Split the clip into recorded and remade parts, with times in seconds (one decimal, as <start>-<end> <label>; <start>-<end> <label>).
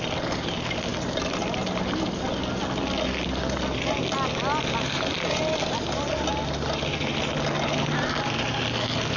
0.0-9.2 recorded